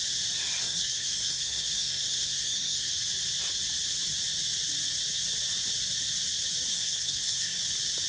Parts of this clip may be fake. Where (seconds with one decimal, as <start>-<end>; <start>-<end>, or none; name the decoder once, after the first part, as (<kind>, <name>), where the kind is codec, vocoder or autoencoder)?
0.6-2.9 (codec, SNAC); 6.7-7.6